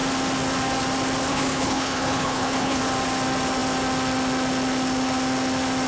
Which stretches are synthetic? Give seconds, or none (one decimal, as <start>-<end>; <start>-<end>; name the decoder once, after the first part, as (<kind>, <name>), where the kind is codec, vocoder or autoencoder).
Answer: 1.3-2.8 (codec, HILCodec)